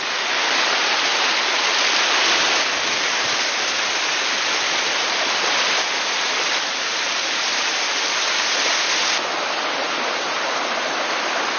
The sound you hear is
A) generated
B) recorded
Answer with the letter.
B